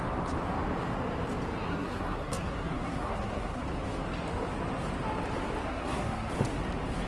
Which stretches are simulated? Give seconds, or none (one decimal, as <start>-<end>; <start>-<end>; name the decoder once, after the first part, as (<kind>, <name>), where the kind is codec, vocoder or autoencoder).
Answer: 1.7-3.6 (codec, SNAC); 5.6-6.3